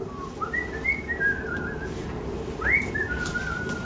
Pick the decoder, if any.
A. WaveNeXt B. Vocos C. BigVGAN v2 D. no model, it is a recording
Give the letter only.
D